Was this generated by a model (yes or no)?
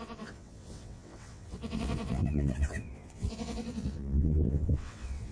yes